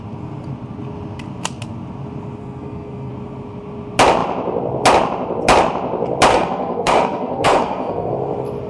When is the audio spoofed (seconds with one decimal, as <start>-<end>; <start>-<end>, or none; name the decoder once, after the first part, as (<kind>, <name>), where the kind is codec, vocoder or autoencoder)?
2.4-3.1 (codec, SNAC); 6.3-8.1